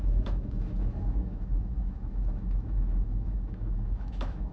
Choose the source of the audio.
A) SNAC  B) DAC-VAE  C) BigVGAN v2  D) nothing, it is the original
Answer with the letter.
B